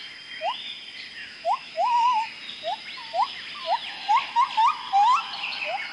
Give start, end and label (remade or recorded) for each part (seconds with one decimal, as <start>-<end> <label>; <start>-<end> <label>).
0.0-1.2 recorded; 1.2-2.3 remade; 2.3-5.9 recorded